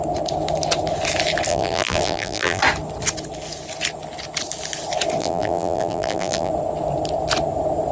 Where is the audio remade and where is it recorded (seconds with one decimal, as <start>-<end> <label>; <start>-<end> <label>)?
0.0-1.5 recorded; 1.5-2.6 remade; 2.6-5.2 recorded; 5.2-6.5 remade; 6.5-7.9 recorded